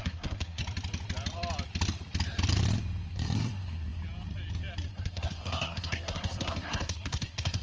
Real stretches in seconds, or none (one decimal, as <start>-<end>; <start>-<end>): 0.6-3.1; 4.0-4.9